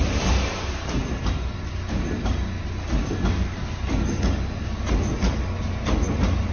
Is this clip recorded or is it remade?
recorded